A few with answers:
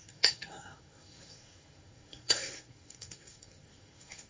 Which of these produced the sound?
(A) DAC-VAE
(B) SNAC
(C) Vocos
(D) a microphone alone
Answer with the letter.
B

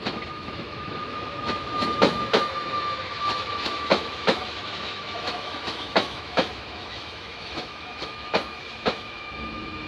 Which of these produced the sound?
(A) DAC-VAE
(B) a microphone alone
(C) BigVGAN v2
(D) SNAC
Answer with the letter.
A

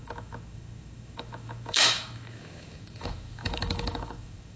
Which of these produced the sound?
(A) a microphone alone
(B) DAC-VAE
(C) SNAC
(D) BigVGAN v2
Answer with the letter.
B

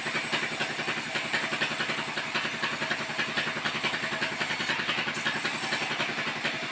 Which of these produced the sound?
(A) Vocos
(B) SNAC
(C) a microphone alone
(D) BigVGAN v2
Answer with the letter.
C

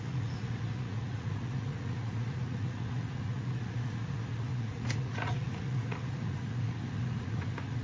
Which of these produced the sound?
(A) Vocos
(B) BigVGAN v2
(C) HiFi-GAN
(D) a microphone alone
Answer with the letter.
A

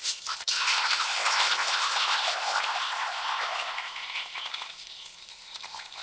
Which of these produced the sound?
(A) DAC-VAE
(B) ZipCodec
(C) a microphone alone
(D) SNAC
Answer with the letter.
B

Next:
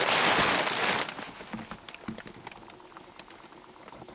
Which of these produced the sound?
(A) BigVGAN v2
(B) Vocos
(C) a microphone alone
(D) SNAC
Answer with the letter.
C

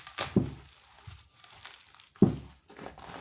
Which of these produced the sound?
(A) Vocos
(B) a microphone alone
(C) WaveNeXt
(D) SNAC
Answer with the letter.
B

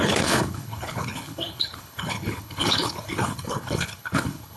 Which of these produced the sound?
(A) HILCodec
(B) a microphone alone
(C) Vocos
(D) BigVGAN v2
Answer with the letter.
A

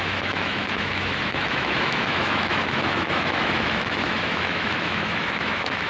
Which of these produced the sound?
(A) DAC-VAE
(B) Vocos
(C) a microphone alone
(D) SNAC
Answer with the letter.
A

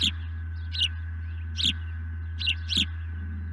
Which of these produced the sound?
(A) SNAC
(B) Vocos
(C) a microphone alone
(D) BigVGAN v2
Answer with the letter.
C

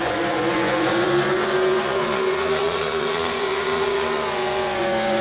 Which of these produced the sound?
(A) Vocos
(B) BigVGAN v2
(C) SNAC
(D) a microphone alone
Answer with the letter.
A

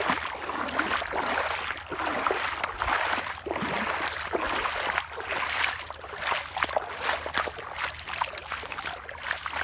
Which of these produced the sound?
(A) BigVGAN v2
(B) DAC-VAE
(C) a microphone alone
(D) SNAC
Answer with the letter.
C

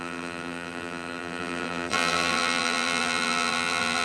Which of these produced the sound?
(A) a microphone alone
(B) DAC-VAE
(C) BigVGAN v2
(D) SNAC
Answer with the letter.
C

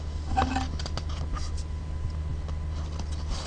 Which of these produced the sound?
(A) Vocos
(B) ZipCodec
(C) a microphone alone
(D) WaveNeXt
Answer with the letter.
C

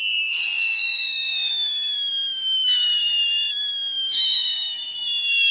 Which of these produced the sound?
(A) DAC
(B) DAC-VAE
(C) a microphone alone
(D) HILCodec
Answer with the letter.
A